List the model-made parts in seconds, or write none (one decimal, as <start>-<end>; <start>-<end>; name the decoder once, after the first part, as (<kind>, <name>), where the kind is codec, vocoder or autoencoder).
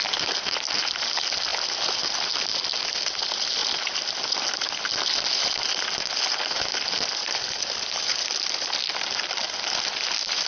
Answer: 8.1-9.2 (vocoder, BigVGAN v2)